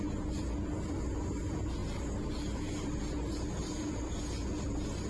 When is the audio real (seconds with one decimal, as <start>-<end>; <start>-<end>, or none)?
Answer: 0.0-5.1